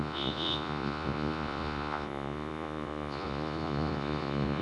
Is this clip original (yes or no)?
no